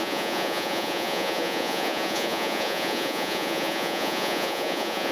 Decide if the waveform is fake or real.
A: fake